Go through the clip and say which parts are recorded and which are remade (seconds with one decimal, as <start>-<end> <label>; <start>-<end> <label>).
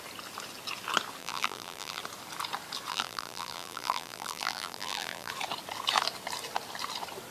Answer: 0.0-1.2 recorded; 1.2-2.0 remade; 2.0-2.9 recorded; 2.9-5.3 remade; 5.3-7.3 recorded